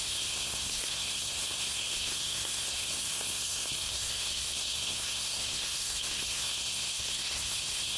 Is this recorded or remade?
remade